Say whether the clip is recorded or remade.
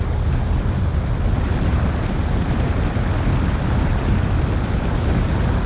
recorded